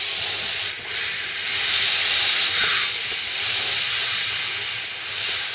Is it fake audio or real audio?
real